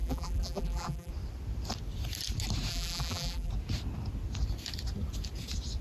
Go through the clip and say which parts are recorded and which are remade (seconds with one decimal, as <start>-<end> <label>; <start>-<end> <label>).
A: 0.0-1.1 remade; 1.1-2.7 recorded; 2.7-3.5 remade; 3.5-5.8 recorded

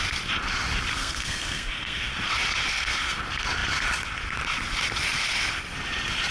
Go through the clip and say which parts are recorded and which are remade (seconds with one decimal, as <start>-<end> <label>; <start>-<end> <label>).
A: 0.0-0.9 recorded; 0.9-2.1 remade; 2.1-2.7 recorded; 2.7-3.2 remade; 3.2-6.3 recorded

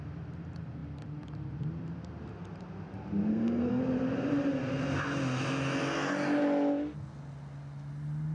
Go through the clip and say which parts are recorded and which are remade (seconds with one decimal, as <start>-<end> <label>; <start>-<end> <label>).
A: 0.0-3.3 recorded; 3.3-3.8 remade; 3.8-8.3 recorded

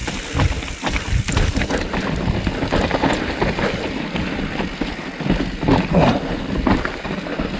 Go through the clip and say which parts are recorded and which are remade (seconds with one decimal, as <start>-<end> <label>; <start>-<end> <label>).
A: 0.0-7.6 recorded

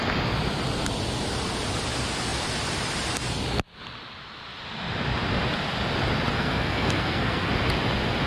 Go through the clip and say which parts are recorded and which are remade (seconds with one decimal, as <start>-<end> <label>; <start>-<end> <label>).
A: 0.0-6.3 recorded; 6.3-7.5 remade; 7.5-8.3 recorded

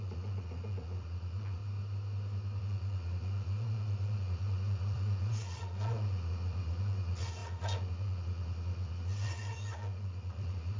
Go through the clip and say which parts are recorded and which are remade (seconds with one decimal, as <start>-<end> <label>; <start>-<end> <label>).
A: 0.0-1.6 remade; 1.6-2.6 recorded; 2.6-10.8 remade